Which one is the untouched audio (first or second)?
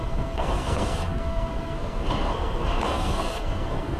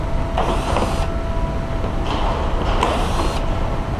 second